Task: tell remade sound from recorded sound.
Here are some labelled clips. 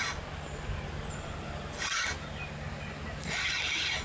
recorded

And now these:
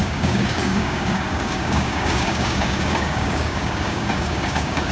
remade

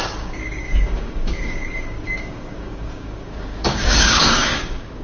remade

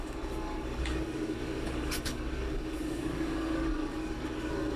remade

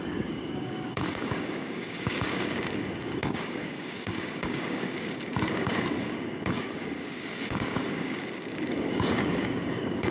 remade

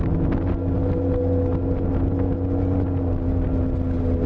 recorded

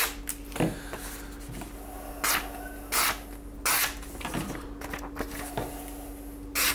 recorded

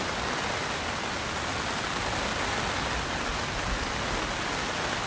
recorded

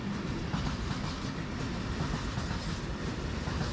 recorded